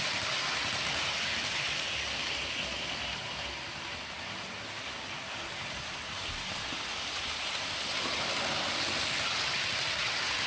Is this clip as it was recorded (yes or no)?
yes